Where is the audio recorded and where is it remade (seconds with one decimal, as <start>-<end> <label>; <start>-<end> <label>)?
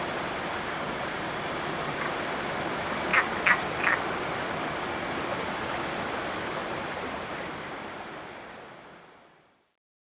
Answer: 0.0-6.6 recorded; 6.6-8.5 remade; 8.5-10.0 recorded